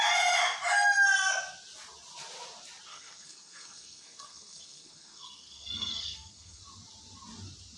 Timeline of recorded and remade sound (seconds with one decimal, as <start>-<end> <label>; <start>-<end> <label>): 0.0-2.9 recorded; 2.9-6.6 remade; 6.6-7.8 recorded

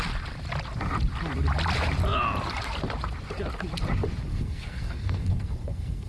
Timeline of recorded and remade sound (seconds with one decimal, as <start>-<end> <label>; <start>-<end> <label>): 0.0-4.3 recorded; 4.3-6.1 remade

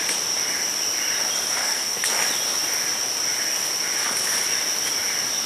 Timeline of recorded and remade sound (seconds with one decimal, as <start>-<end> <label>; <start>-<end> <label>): 0.0-1.6 recorded; 1.6-2.1 remade; 2.1-5.5 recorded

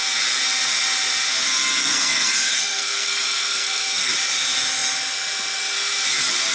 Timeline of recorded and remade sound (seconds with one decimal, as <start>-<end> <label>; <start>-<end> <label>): 0.0-1.8 recorded; 1.8-4.1 remade; 4.1-6.5 recorded

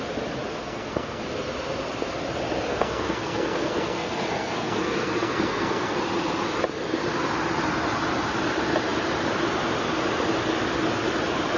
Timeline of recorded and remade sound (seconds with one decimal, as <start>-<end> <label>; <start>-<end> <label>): 0.0-0.6 recorded; 0.6-1.2 remade; 1.2-2.7 recorded; 2.7-6.0 remade; 6.0-11.6 recorded

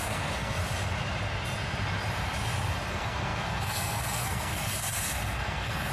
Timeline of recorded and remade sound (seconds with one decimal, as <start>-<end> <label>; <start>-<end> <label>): 0.0-0.6 remade; 0.6-2.9 recorded; 2.9-5.9 remade

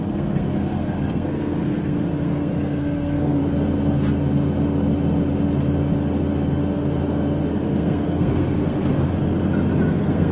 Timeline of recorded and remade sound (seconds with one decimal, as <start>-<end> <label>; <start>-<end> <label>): 0.0-3.4 remade; 3.4-7.5 recorded; 7.5-9.1 remade; 9.1-9.9 recorded; 9.9-10.3 remade

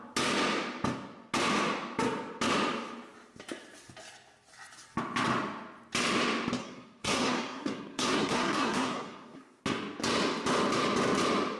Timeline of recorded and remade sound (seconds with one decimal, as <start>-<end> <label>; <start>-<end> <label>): 0.0-6.6 recorded; 6.6-9.6 remade; 9.6-11.6 recorded